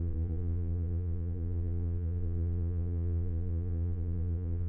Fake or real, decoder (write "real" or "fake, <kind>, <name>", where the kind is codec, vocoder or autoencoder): fake, vocoder, Vocos